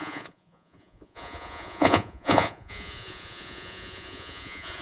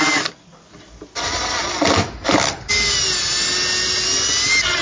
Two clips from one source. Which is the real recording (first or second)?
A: second